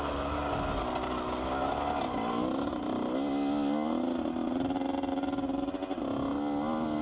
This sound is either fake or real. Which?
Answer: real